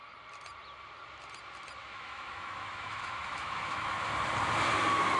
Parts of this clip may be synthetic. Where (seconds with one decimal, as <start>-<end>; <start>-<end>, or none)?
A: 1.8-4.1